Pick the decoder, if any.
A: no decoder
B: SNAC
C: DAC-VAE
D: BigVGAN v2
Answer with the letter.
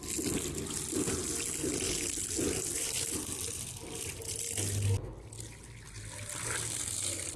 A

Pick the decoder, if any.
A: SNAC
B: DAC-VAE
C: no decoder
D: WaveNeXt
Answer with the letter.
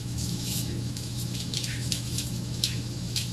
B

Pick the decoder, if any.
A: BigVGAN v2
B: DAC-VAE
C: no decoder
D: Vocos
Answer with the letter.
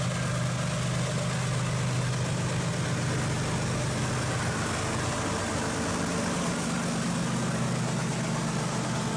C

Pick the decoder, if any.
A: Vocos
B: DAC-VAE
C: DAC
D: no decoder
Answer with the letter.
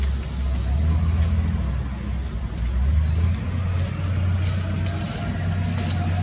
D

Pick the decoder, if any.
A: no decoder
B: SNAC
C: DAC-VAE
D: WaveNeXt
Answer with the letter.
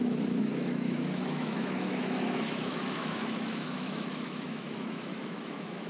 C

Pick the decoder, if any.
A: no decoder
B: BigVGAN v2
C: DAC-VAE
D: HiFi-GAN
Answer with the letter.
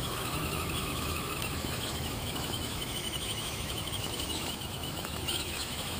C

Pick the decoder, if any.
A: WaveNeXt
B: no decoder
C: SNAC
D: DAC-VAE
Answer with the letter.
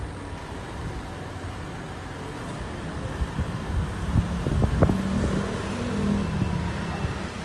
B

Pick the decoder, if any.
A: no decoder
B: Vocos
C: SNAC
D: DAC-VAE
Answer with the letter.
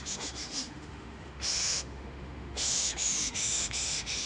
D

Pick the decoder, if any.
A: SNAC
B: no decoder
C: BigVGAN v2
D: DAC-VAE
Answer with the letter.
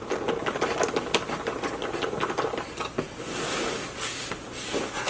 B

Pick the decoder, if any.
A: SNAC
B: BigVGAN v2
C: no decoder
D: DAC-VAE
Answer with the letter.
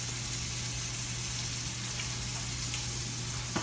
C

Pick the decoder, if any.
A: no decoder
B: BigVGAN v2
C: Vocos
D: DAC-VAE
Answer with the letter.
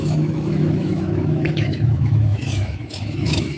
D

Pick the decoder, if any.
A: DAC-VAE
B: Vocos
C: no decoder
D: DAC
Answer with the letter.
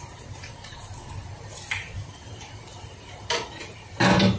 C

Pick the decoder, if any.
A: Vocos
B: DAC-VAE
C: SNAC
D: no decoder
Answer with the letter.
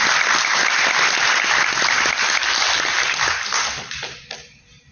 D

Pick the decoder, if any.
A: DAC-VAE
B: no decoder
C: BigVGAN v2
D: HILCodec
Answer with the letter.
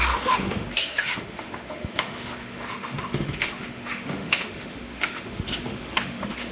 A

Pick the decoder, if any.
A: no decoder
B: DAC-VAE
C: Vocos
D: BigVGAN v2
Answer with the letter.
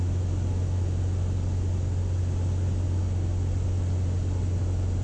A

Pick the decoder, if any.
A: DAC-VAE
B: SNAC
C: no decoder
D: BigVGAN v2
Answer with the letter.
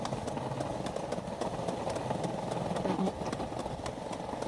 C